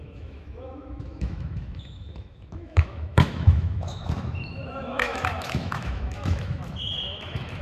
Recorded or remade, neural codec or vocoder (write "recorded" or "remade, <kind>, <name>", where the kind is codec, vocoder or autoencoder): remade, autoencoder, DAC-VAE